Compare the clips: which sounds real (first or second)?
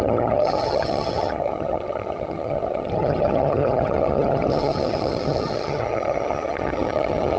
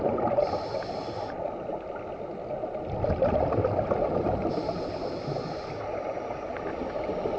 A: second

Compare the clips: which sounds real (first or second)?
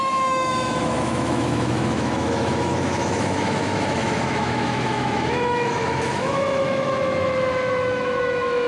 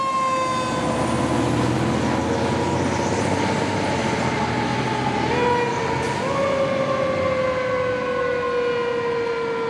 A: second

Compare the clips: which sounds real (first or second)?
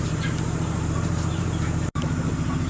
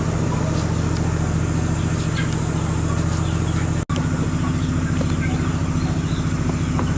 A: second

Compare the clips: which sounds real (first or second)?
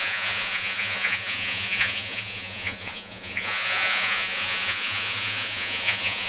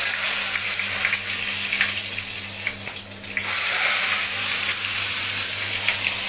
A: second